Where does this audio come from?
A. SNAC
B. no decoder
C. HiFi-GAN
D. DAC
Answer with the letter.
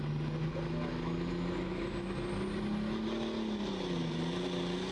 B